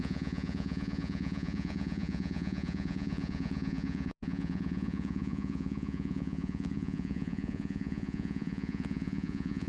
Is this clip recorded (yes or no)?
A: no